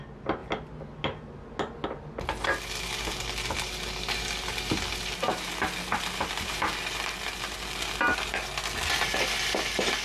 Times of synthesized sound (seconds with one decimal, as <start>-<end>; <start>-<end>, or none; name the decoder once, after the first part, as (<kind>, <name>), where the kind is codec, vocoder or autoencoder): none